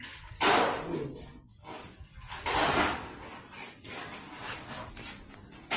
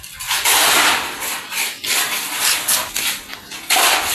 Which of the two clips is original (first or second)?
first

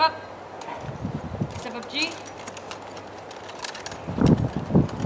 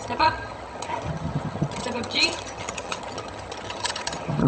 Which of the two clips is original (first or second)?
first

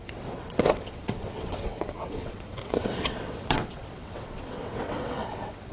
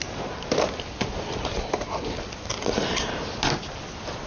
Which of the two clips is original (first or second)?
second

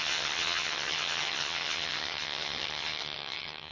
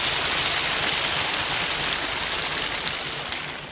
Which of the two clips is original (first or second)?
second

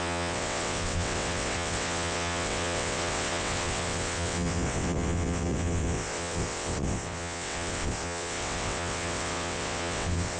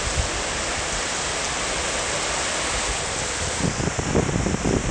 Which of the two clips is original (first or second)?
second